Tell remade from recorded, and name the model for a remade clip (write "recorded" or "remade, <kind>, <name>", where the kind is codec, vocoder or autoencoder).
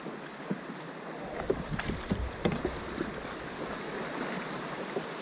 recorded